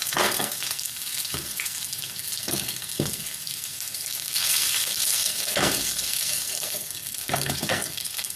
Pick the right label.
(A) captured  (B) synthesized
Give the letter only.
B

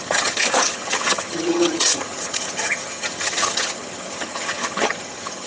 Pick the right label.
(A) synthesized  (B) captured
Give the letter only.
A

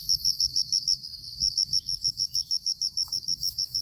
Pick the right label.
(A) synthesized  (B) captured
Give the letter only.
A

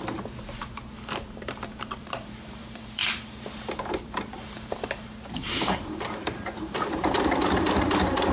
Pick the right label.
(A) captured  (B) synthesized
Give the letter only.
B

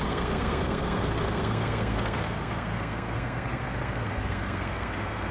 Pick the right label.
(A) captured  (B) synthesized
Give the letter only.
B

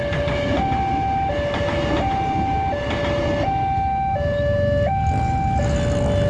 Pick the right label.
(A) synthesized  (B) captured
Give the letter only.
B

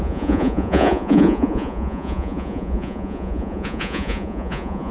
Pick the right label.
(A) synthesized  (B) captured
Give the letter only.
A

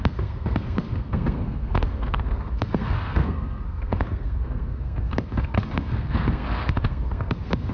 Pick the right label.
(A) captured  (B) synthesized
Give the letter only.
B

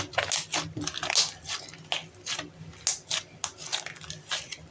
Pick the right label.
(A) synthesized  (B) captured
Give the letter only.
B